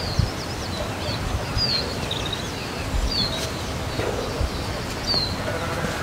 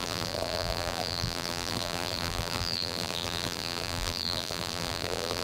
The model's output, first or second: second